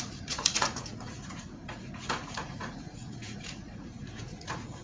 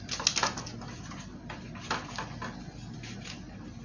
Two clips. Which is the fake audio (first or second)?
first